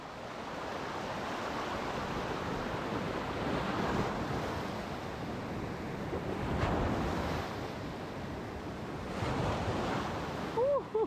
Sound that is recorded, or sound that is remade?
recorded